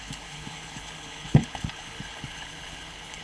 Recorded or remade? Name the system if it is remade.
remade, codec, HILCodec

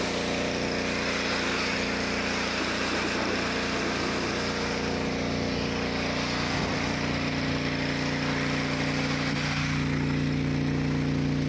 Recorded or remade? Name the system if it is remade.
recorded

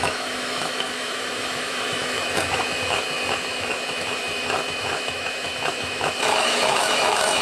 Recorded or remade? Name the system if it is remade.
remade, autoencoder, DAC-VAE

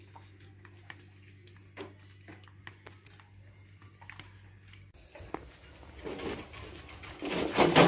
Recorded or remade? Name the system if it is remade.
recorded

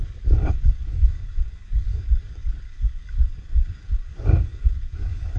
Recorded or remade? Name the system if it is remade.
remade, codec, DAC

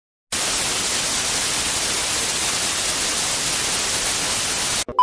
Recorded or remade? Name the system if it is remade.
recorded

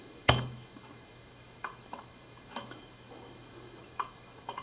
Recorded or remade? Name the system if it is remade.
remade, autoencoder, DAC-VAE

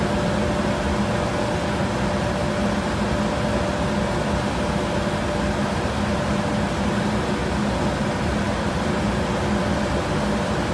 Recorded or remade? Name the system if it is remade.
recorded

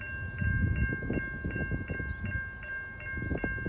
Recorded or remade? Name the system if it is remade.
recorded